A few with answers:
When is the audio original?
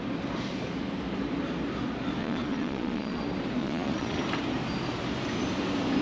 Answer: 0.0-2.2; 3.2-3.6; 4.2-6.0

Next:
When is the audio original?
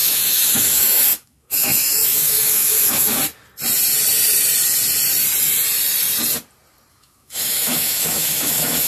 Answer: 3.2-6.9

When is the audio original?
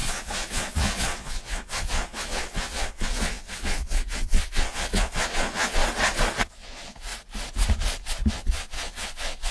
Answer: 5.8-6.4; 7.1-8.3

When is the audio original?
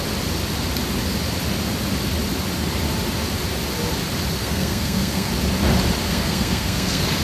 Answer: 0.0-4.4; 5.3-6.0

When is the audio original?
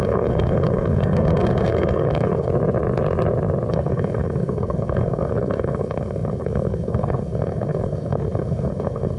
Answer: 2.5-3.7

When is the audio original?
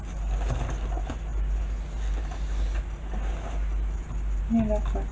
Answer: 0.0-5.1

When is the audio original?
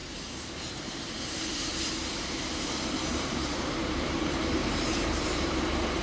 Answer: 1.7-2.9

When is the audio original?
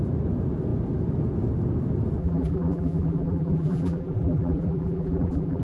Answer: 0.0-2.2